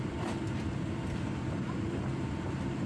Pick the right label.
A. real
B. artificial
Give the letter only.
A